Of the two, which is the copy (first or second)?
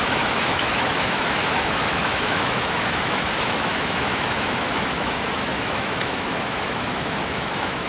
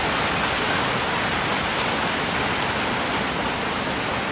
first